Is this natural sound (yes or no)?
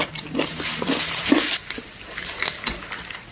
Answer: yes